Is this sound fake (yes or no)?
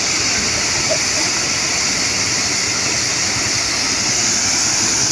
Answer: no